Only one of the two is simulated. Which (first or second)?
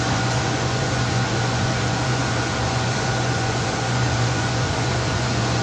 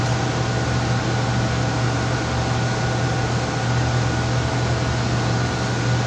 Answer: first